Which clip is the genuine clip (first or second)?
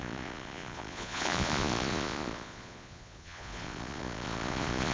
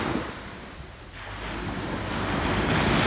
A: second